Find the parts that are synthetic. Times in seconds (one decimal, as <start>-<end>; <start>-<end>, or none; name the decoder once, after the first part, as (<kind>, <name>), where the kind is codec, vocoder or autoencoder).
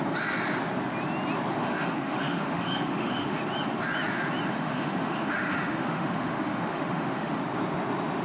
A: 1.5-3.4 (autoencoder, DAC-VAE); 4.5-7.4